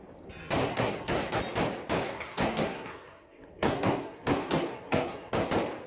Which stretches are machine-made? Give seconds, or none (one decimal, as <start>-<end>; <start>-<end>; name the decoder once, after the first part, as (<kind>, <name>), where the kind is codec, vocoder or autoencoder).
0.6-1.4 (codec, SNAC); 2.0-5.5